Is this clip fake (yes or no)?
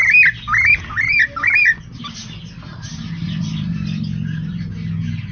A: no